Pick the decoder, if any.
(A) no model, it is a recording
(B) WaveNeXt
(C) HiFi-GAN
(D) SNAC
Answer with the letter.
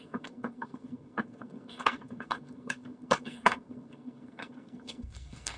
D